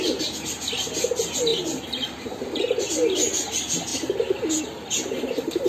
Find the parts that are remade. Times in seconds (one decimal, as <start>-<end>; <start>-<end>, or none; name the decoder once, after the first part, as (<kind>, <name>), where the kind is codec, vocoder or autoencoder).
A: 1.5-2.9 (vocoder, BigVGAN v2)